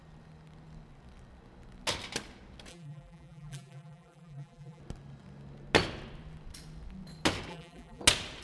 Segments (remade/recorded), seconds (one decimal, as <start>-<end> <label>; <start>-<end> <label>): 0.0-2.7 recorded; 2.7-4.8 remade; 4.8-7.5 recorded; 7.5-8.0 remade; 8.0-8.4 recorded